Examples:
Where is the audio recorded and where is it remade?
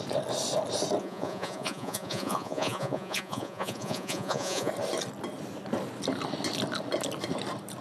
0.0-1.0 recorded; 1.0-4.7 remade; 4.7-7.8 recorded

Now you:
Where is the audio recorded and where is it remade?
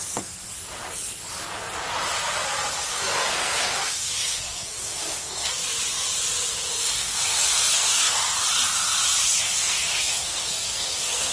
0.0-0.4 remade; 0.4-2.9 recorded; 2.9-5.6 remade; 5.6-6.8 recorded; 6.8-8.2 remade; 8.2-9.4 recorded; 9.4-11.3 remade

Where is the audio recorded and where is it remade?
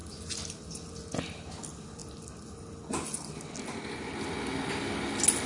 0.0-5.5 recorded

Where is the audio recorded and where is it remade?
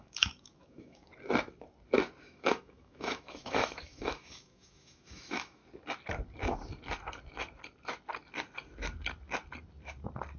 0.0-1.1 remade; 1.1-2.2 recorded; 2.2-5.6 remade; 5.6-10.4 recorded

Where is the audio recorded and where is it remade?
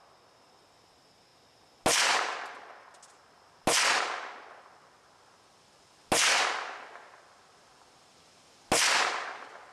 0.0-9.7 recorded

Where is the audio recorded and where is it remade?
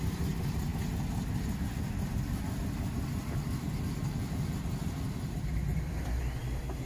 0.0-6.9 recorded